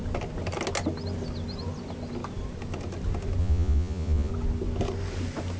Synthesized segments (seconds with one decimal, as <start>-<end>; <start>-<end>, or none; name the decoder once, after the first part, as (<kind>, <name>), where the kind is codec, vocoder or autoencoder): 3.4-4.3 (vocoder, Vocos)